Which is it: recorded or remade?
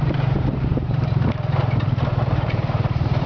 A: remade